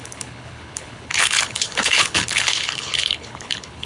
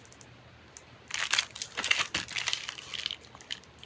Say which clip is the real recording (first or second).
second